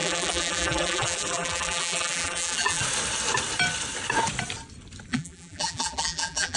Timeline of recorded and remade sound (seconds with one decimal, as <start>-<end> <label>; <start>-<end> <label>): 0.0-2.8 remade; 2.8-5.1 recorded; 5.1-6.6 remade